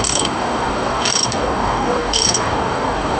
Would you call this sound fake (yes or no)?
yes